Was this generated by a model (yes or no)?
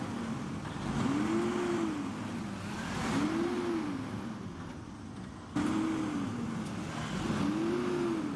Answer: no